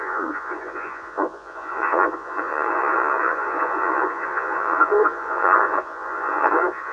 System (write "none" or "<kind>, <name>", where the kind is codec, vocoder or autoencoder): vocoder, Vocos